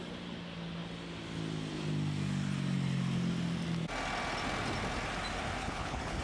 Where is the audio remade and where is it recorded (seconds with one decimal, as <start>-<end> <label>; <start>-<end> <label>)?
0.0-5.6 recorded; 5.6-6.2 remade